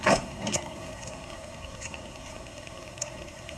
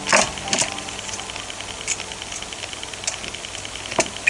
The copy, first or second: first